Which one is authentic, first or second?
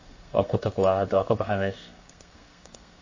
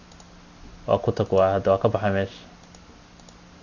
second